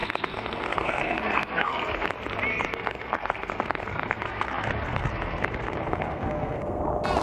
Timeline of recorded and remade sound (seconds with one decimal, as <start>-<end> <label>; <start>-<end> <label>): 0.0-2.1 remade; 2.1-2.5 recorded; 2.5-6.8 remade; 6.8-7.2 recorded